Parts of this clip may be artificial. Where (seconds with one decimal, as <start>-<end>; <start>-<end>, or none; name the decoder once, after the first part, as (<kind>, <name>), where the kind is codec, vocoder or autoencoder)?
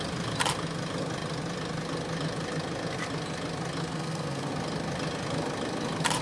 3.8-4.5 (codec, SNAC)